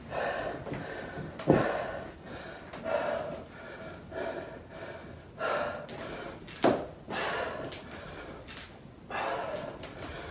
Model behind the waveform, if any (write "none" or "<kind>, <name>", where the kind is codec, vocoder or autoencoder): none